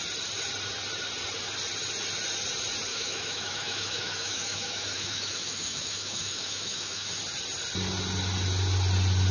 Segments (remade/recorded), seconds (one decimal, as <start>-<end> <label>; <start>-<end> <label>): 0.0-2.9 recorded; 2.9-7.2 remade; 7.2-9.3 recorded